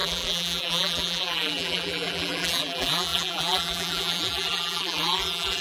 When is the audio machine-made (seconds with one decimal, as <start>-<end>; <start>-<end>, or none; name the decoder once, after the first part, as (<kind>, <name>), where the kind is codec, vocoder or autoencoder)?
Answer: 0.0-5.6 (vocoder, BigVGAN v2)